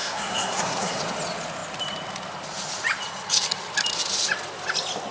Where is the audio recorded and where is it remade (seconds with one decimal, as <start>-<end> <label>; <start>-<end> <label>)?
0.0-1.0 remade; 1.0-5.1 recorded